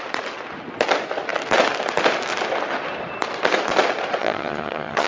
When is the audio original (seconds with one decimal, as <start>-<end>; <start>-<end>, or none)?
0.0-4.2